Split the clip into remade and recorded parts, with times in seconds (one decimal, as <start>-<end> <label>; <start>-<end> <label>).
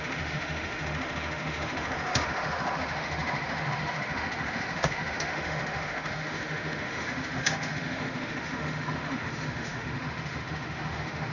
0.0-11.3 remade